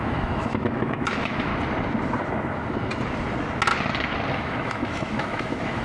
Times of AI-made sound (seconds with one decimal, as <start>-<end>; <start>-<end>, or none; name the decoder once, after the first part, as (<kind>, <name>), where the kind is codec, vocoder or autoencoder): 0.0-1.5 (autoencoder, DAC-VAE); 4.3-5.8